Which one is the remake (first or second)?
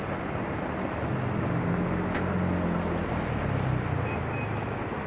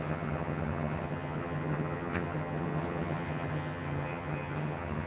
second